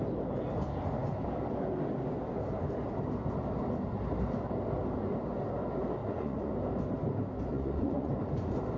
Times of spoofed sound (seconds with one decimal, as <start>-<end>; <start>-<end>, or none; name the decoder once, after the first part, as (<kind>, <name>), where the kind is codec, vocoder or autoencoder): 6.0-6.5 (vocoder, Vocos); 7.5-8.1